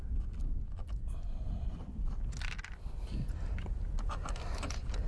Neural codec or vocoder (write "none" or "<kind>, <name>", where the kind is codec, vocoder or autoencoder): none